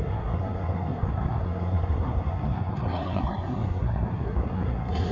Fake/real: fake